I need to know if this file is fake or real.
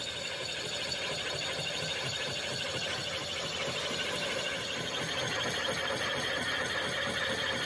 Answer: real